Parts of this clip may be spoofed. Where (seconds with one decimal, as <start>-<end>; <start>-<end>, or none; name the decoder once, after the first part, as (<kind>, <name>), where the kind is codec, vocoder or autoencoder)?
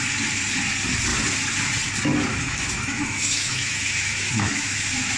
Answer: 2.3-5.2 (autoencoder, DAC-VAE)